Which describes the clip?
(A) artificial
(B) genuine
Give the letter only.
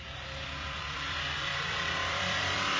A